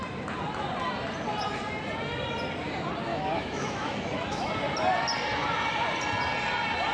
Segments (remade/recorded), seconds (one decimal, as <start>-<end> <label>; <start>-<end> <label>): 0.0-3.1 recorded; 3.1-4.5 remade; 4.5-6.9 recorded